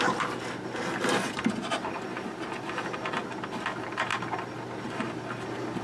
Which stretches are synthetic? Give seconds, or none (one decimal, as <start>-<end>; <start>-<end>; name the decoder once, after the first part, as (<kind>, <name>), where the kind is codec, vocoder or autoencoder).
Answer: none